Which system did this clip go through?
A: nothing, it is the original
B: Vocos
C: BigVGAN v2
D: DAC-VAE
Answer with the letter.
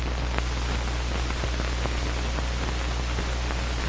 A